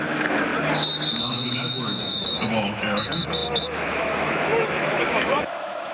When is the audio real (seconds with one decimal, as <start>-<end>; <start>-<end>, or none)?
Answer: 0.5-1.3